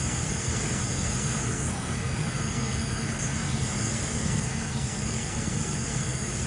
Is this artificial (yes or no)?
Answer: yes